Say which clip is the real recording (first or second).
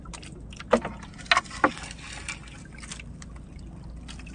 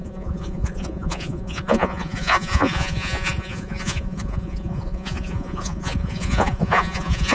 first